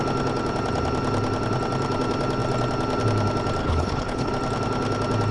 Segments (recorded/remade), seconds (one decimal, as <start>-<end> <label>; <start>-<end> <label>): 0.0-3.6 recorded; 3.6-4.3 remade; 4.3-5.3 recorded